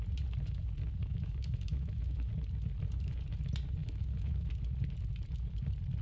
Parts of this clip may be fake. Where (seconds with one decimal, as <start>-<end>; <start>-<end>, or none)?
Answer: 1.0-2.3; 3.8-4.5